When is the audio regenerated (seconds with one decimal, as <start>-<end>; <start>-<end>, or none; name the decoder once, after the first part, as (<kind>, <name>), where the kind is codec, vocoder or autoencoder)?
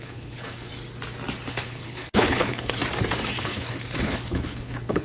0.0-0.7 (codec, HILCodec); 1.5-2.8; 3.4-5.0